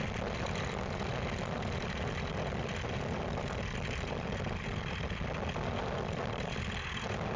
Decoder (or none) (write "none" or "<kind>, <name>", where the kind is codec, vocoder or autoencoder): none